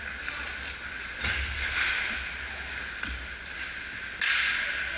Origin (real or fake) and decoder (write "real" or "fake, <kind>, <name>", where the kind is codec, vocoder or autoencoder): real